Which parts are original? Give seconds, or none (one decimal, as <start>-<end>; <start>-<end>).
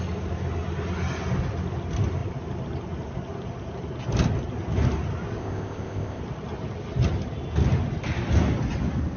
0.0-5.4; 6.2-9.2